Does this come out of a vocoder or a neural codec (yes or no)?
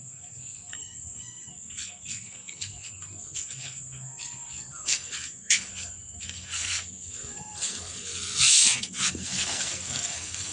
yes